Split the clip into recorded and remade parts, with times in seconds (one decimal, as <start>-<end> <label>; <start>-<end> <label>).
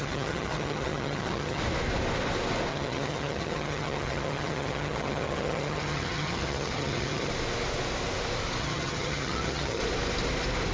0.0-1.6 remade; 1.6-2.7 recorded; 2.7-7.3 remade; 7.3-8.6 recorded; 8.6-9.8 remade; 9.8-10.7 recorded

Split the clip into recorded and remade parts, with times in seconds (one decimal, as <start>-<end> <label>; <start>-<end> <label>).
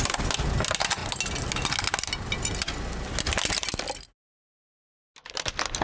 0.0-5.8 recorded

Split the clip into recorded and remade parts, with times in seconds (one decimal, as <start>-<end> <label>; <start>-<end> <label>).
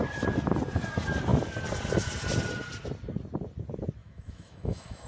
0.0-4.0 recorded; 4.0-5.1 remade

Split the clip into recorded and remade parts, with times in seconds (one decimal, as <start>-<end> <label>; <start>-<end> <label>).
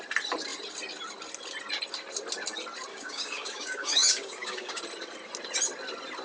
0.0-2.9 recorded; 2.9-4.8 remade; 4.8-6.2 recorded